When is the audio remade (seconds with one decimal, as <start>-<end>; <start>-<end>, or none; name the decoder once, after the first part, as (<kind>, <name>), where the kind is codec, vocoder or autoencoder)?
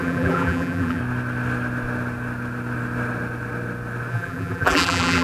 0.0-1.0 (vocoder, BigVGAN v2); 4.1-5.2